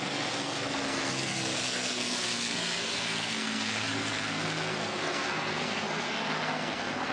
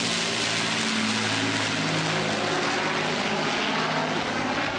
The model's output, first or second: first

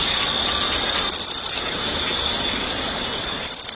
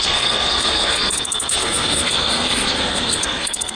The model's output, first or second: second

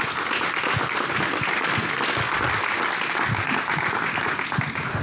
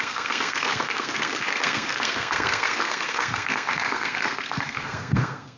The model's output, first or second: second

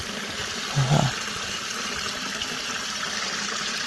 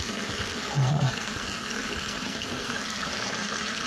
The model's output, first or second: second